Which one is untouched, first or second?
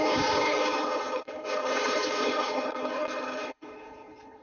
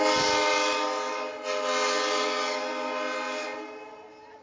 second